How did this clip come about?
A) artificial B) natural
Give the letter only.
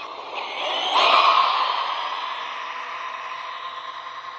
B